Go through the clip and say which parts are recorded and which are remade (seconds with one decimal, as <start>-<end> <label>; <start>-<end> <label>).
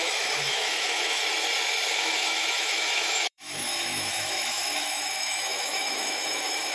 0.0-1.2 remade; 1.2-1.9 recorded; 1.9-6.7 remade